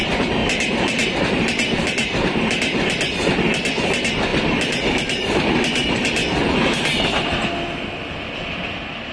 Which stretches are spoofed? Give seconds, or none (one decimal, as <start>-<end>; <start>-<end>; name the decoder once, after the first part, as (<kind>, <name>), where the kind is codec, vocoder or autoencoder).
none